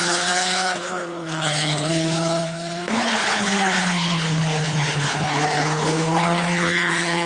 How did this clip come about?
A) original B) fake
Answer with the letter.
B